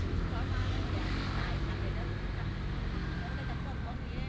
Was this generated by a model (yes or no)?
no